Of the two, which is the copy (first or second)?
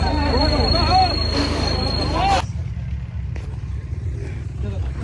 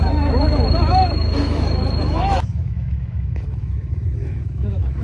second